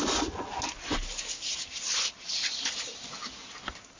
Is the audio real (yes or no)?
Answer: yes